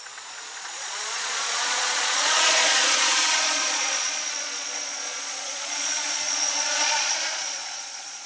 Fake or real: fake